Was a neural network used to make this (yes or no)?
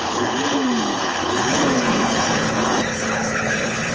yes